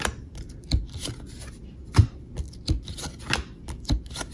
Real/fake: real